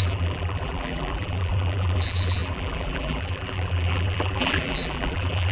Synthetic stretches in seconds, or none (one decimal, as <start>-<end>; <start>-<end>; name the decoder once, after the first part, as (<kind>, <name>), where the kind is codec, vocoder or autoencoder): 0.0-5.5 (vocoder, BigVGAN v2)